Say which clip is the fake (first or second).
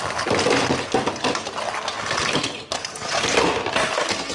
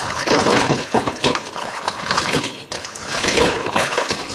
second